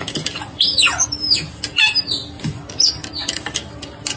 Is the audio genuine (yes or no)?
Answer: no